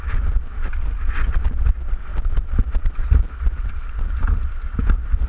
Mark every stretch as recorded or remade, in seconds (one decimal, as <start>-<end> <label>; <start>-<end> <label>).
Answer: 0.0-2.1 recorded; 2.1-2.6 remade; 2.6-5.3 recorded